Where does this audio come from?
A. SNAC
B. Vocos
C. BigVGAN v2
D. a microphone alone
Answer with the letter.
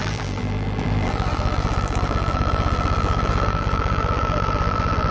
C